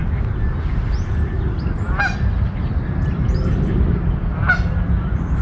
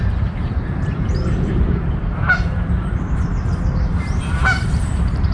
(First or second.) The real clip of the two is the first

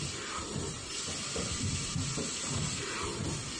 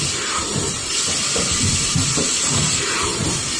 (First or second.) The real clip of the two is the first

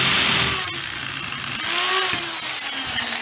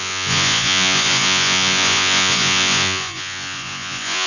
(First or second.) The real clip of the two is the first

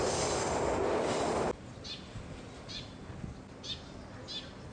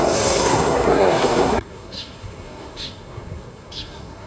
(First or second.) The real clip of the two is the first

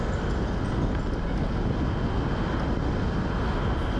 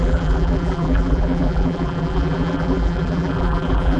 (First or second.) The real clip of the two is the first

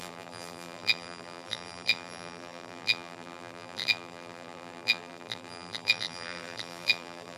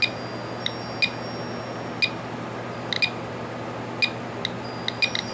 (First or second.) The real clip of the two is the second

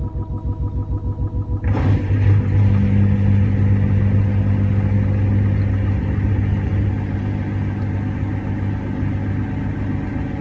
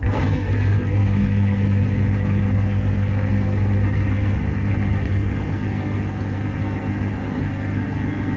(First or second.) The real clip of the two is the first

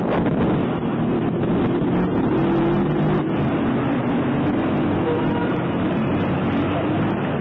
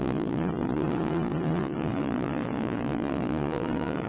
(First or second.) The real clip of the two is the first